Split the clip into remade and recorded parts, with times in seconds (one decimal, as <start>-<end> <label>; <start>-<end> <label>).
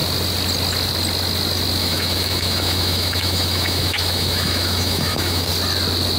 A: 0.0-1.8 recorded; 1.8-5.5 remade; 5.5-6.2 recorded